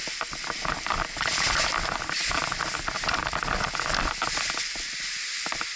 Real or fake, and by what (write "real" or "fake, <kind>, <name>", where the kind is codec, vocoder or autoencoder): real